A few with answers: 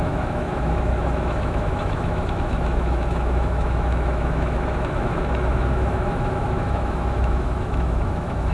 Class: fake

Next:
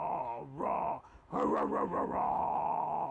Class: fake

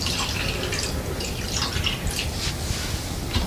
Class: real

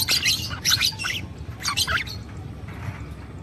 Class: real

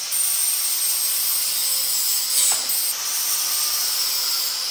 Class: real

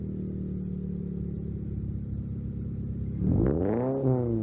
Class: real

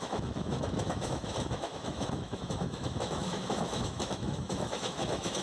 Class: fake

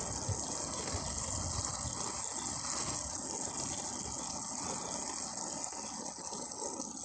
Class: real